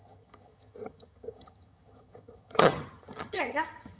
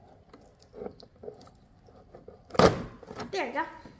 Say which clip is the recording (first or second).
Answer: second